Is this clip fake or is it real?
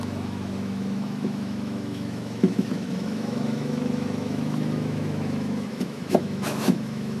fake